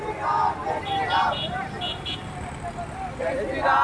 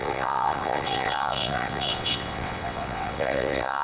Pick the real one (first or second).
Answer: first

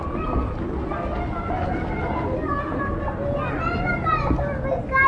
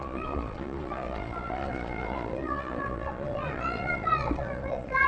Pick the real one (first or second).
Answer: first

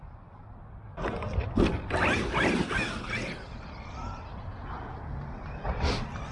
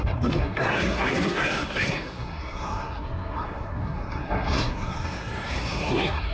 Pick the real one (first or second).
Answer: first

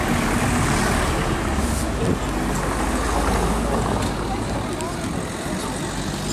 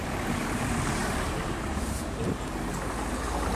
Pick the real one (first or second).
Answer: first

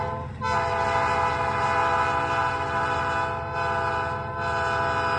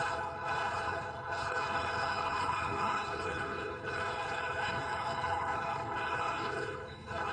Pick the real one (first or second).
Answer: first